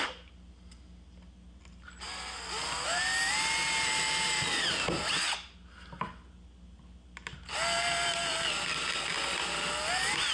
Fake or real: real